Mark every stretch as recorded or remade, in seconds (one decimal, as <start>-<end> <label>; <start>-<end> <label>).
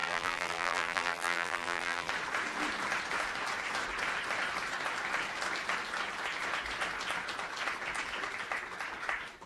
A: 0.0-2.1 remade; 2.1-9.5 recorded